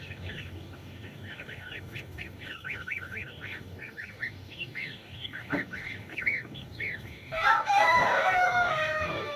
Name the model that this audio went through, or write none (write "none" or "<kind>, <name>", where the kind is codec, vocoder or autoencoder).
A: codec, DAC